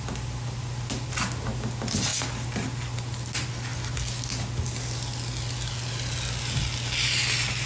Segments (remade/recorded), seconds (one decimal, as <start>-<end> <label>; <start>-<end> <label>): 0.0-7.7 recorded